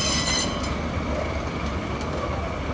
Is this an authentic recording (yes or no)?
yes